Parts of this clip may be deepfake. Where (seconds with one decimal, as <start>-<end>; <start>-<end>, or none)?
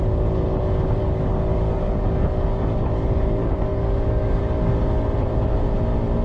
1.0-4.7